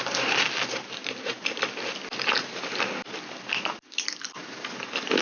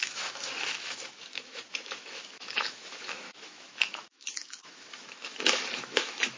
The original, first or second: first